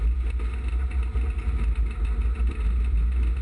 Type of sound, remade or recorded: recorded